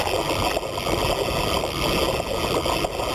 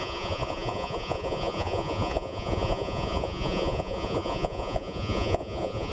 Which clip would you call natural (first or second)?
first